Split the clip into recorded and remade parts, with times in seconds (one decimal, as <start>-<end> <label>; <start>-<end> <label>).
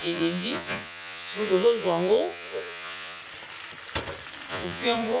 0.0-3.2 remade; 3.2-4.5 recorded; 4.5-5.2 remade